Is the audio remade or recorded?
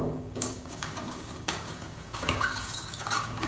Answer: remade